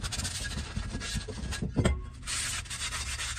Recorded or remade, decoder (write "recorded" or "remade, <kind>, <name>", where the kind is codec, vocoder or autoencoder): recorded